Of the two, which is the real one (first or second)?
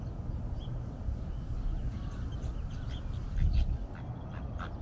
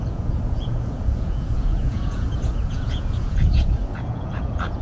first